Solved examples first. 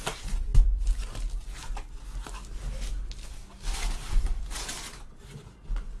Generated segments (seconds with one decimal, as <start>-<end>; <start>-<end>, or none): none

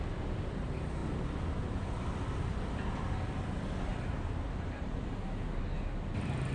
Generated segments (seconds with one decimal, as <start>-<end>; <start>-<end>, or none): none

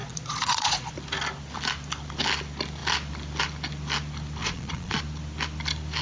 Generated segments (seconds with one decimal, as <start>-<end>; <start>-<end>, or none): 0.0-0.9; 4.4-5.0

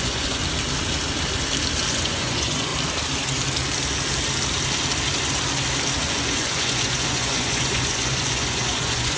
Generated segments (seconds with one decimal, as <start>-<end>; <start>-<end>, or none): 0.0-0.4; 1.9-2.7; 6.1-9.2

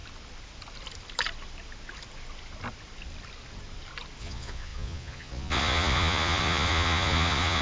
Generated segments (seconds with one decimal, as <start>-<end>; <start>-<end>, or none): 4.2-7.6

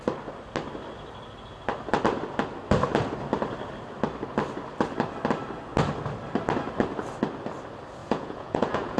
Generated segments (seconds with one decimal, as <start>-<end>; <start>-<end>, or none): 8.0-9.0

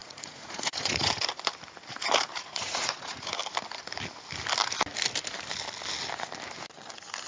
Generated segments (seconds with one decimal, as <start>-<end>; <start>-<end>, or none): 0.0-1.1; 2.3-3.4